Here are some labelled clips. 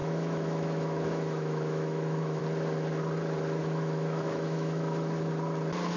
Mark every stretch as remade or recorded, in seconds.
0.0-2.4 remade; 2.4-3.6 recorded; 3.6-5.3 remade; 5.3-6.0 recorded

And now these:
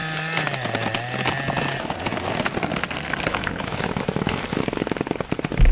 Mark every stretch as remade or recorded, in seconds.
0.0-3.3 recorded; 3.3-4.4 remade; 4.4-5.7 recorded

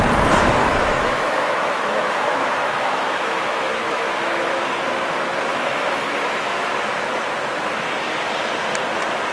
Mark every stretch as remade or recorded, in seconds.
0.0-0.6 recorded; 0.6-4.5 remade; 4.5-5.5 recorded; 5.5-6.7 remade; 6.7-9.3 recorded

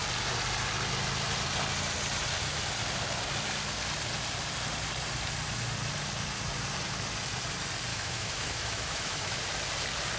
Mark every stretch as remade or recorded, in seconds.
0.0-7.9 recorded; 7.9-9.4 remade; 9.4-10.2 recorded

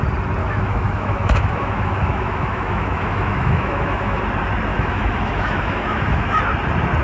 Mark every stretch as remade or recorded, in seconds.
0.0-0.4 recorded; 0.4-4.2 remade; 4.2-4.7 recorded; 4.7-6.4 remade; 6.4-7.0 recorded

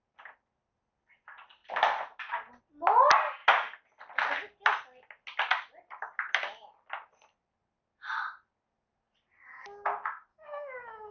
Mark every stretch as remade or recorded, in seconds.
0.0-10.3 recorded; 10.3-11.1 remade

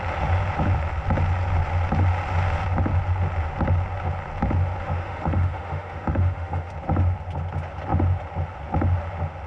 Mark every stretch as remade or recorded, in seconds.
0.0-4.8 recorded; 4.8-6.7 remade; 6.7-9.5 recorded

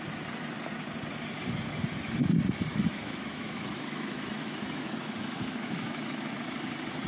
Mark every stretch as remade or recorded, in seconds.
0.0-2.7 recorded; 2.7-6.3 remade; 6.3-7.1 recorded